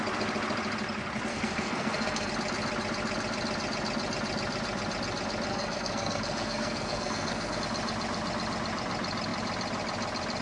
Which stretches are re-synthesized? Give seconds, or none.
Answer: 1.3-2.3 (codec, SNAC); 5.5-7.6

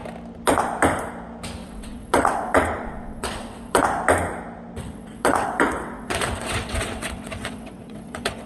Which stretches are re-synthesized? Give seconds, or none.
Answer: 1.6-3.8 (vocoder, WaveNeXt); 4.8-8.5

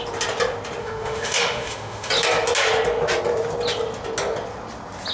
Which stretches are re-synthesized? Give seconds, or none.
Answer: 0.8-2.1 (autoencoder, DAC-VAE)

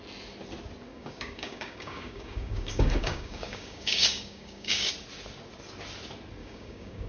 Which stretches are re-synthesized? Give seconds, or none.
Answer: 0.9-4.9 (codec, DAC); 6.4-7.1

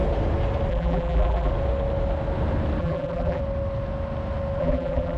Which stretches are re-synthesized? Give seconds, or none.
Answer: 0.7-1.5 (vocoder, BigVGAN v2); 2.8-3.4; 4.6-5.2